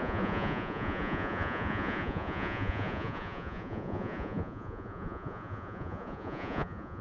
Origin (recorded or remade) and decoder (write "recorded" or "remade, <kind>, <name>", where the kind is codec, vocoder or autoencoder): remade, vocoder, Vocos